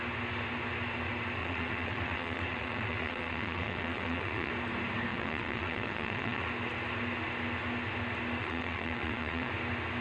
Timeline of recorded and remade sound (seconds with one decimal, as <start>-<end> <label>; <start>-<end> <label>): 0.0-1.4 recorded; 1.4-4.5 remade; 4.5-5.1 recorded; 5.1-6.5 remade; 6.5-8.4 recorded; 8.4-9.5 remade; 9.5-10.0 recorded